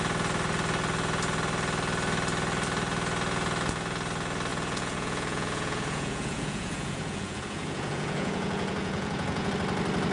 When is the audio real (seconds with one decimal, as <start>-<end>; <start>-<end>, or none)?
0.0-4.5; 9.5-10.1

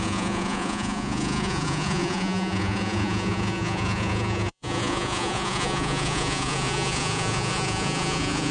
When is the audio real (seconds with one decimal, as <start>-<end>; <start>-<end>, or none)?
none